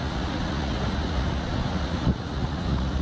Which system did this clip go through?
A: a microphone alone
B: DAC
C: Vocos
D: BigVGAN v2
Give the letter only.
C